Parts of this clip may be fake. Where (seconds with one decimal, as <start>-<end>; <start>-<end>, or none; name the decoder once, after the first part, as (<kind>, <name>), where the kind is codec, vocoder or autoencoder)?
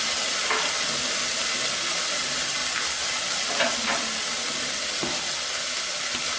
none